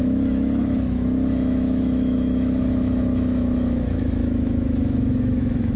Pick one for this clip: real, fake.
fake